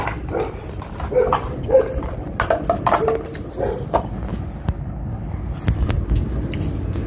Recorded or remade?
recorded